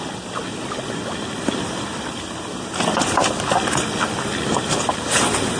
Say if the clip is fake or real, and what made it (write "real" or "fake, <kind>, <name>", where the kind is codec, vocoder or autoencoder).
fake, vocoder, BigVGAN v2